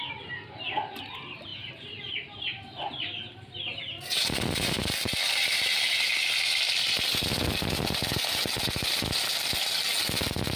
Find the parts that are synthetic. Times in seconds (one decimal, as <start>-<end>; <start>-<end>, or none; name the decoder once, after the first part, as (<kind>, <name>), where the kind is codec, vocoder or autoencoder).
none